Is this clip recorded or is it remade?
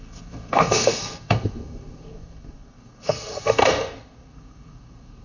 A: remade